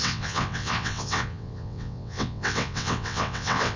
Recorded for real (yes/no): no